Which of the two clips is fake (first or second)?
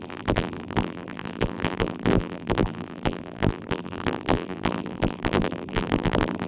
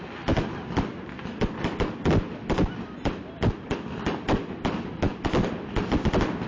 first